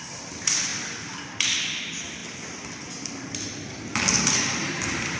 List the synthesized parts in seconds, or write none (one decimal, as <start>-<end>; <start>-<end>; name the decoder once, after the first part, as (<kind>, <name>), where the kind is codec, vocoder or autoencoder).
none